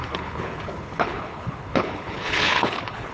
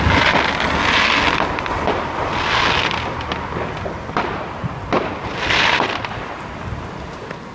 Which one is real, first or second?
second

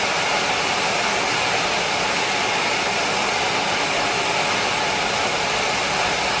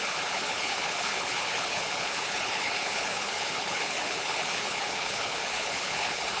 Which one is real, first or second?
first